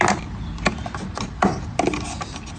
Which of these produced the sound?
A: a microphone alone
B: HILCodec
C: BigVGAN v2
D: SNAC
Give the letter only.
A